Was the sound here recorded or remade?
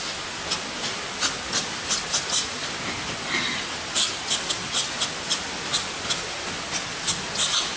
recorded